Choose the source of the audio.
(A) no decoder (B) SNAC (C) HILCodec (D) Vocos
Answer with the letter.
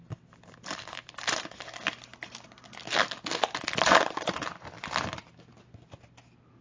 A